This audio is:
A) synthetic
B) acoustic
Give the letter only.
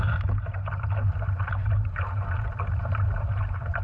A